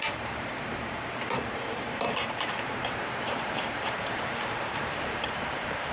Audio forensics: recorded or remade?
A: remade